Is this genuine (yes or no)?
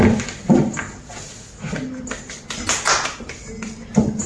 yes